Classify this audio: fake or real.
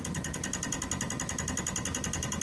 real